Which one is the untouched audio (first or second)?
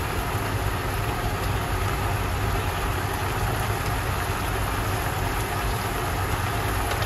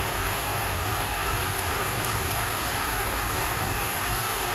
first